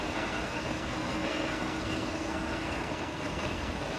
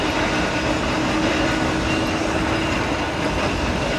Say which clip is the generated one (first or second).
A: first